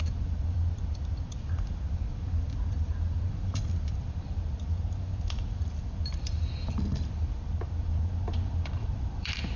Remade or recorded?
remade